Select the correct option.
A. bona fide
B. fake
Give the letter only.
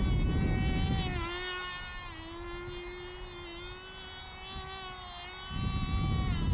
A